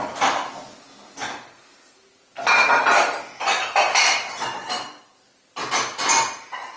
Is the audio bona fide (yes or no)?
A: yes